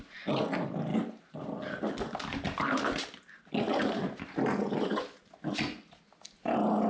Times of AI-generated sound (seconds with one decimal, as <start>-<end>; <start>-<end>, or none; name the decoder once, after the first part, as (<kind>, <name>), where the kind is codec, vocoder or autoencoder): none